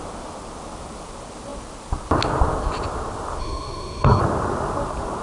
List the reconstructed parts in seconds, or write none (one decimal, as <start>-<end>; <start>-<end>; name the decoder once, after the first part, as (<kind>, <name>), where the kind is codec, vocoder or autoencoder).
3.4-4.2 (codec, SNAC)